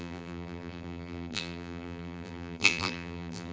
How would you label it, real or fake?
fake